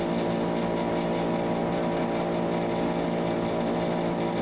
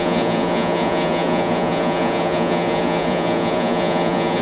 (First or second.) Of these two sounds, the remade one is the second